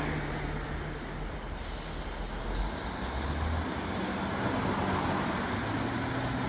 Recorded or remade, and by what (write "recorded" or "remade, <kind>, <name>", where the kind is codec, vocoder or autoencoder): recorded